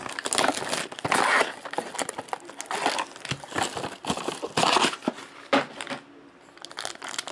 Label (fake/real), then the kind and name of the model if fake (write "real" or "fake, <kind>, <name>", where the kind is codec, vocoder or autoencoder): real